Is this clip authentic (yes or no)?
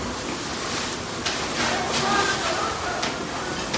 yes